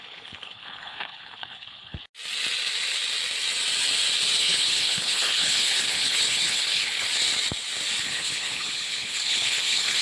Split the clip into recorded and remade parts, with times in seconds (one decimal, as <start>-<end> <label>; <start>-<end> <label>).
0.0-2.0 remade; 2.0-4.4 recorded; 4.4-7.1 remade; 7.1-8.0 recorded; 8.0-10.0 remade